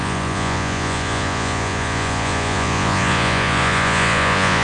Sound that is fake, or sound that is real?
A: fake